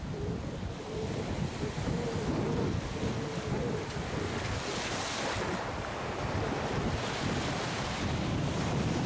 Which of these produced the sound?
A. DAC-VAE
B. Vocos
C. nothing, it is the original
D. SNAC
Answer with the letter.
C